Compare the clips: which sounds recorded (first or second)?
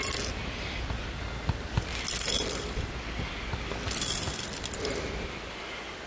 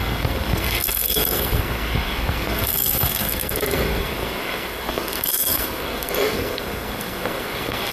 first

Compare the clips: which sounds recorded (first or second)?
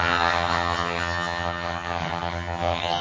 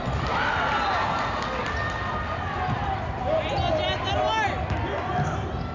second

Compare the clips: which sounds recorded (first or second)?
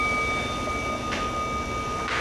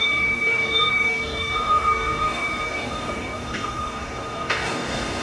first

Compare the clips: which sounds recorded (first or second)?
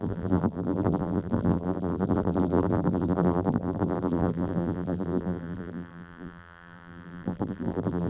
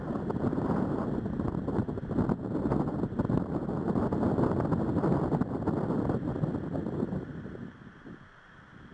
second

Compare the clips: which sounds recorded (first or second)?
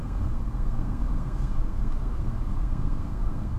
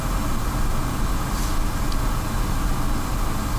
second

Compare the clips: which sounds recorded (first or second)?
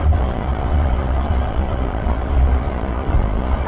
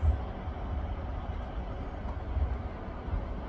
second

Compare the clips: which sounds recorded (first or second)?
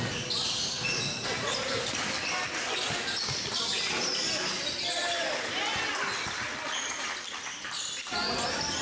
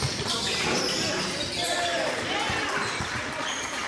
first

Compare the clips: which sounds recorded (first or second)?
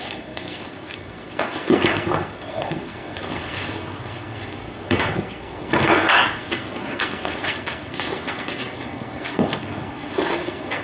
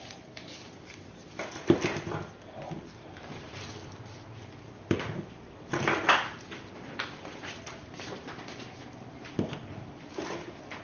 second